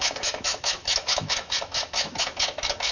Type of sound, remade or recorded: remade